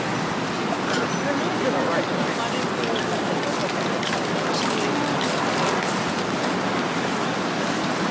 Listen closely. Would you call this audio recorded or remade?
recorded